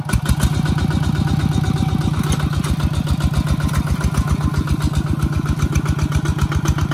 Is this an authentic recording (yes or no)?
yes